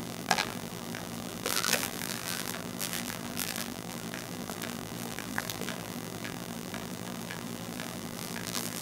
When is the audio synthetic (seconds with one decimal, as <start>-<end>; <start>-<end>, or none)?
0.0-8.8